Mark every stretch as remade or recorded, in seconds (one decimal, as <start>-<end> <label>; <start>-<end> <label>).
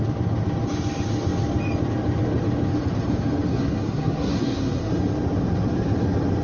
0.0-3.5 recorded; 3.5-4.9 remade; 4.9-6.4 recorded